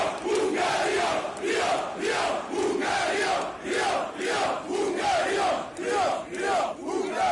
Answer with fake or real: real